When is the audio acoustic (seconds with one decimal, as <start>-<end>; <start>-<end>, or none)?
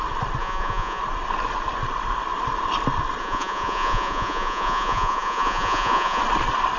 0.0-0.4; 1.0-3.2; 6.2-6.8